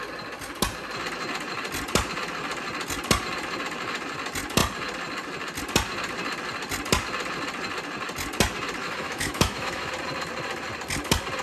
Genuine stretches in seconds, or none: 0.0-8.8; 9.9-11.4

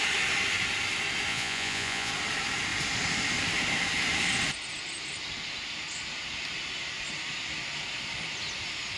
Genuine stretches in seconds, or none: 0.0-1.3; 2.1-9.0

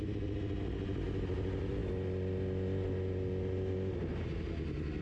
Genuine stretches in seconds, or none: 0.0-5.0